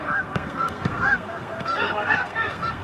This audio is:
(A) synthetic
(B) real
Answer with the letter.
A